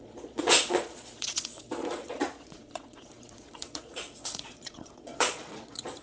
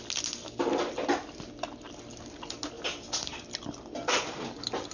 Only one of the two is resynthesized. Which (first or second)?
first